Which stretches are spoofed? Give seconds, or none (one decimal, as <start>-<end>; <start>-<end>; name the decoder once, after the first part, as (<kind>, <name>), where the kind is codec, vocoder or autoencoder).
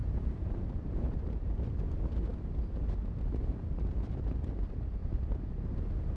0.0-1.6 (vocoder, BigVGAN v2); 5.0-6.2